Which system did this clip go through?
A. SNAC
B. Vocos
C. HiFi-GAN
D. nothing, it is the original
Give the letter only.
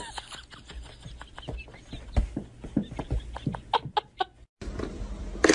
D